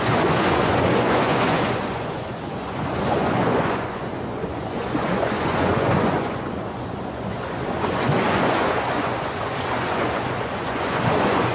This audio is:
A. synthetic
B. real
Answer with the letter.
A